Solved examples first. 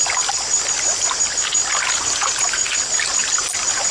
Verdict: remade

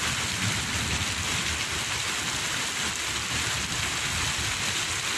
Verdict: recorded